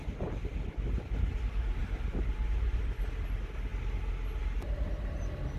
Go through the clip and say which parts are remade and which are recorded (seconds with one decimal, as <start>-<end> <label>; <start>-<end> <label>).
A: 0.0-1.8 recorded; 1.8-2.8 remade; 2.8-5.6 recorded